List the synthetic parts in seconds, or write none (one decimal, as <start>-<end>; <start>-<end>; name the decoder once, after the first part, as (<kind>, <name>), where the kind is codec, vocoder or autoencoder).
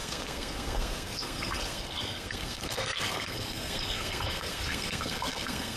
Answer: 0.0-5.8 (codec, SNAC)